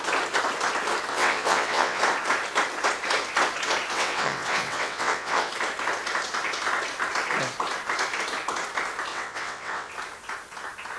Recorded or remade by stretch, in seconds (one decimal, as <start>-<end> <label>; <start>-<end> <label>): 0.0-1.1 recorded; 1.1-2.0 remade; 2.0-3.9 recorded; 3.9-5.5 remade; 5.5-9.1 recorded; 9.1-9.9 remade; 9.9-11.0 recorded